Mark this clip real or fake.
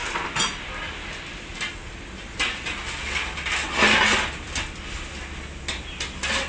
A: real